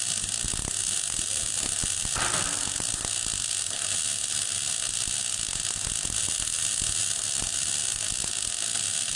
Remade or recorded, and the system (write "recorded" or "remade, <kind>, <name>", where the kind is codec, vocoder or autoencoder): recorded